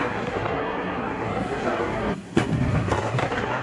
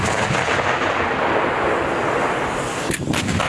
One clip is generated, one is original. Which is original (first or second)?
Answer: second